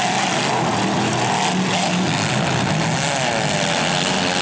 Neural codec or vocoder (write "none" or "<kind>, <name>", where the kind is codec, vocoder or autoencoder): none